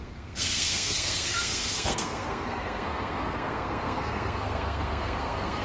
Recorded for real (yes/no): no